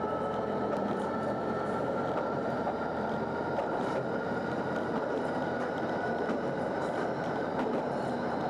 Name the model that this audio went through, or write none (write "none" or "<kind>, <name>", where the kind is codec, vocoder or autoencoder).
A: vocoder, BigVGAN v2